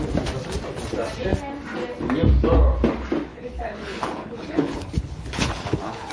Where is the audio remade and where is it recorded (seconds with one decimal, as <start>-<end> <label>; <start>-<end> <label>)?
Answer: 0.0-3.3 recorded; 3.3-6.1 remade